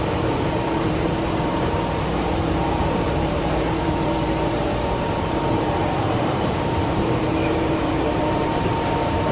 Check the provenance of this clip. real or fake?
fake